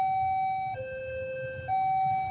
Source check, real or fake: real